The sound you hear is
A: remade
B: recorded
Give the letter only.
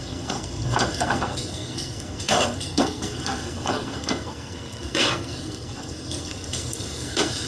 A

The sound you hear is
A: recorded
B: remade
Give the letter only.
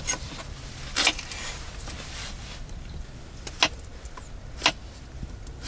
A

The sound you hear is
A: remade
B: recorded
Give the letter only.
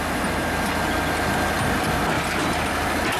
B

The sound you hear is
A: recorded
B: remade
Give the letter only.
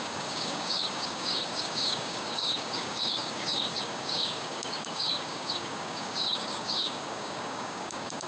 B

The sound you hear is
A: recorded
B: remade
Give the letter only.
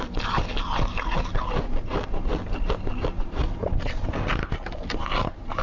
A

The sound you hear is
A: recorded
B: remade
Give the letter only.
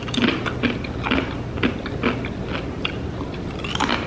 A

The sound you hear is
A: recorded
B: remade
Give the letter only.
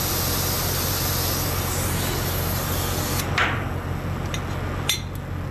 A